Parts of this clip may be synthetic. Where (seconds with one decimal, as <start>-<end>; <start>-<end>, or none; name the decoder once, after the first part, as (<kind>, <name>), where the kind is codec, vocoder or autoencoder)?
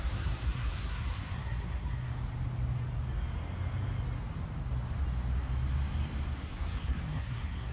0.0-2.1 (codec, SNAC); 6.4-7.7